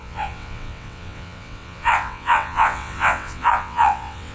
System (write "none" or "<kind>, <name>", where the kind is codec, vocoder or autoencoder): vocoder, WaveNeXt